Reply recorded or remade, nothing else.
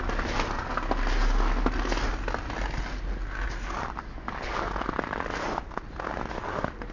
recorded